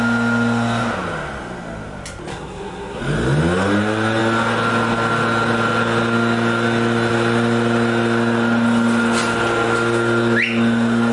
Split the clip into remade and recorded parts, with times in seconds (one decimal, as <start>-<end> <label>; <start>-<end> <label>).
0.0-2.3 recorded; 2.3-3.0 remade; 3.0-11.1 recorded